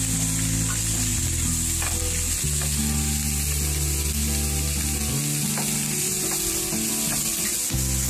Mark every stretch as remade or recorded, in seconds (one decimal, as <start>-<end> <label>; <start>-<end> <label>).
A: 0.0-8.1 recorded